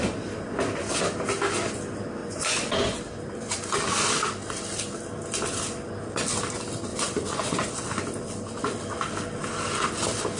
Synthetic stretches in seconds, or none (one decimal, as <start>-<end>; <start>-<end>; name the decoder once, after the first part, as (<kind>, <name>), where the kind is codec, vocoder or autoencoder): 2.2-3.0 (vocoder, Vocos); 6.9-7.7